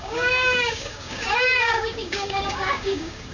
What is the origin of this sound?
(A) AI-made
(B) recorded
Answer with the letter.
A